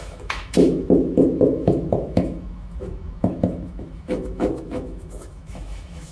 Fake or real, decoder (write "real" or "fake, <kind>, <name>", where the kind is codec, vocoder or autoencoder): fake, autoencoder, DAC-VAE